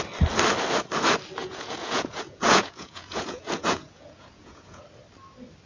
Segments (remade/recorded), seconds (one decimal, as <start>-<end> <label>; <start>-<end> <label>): 0.0-1.4 recorded; 1.4-4.8 remade; 4.8-5.7 recorded